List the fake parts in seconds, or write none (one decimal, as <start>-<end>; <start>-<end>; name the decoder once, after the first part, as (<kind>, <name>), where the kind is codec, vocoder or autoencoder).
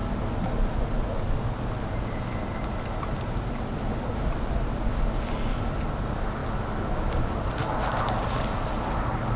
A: none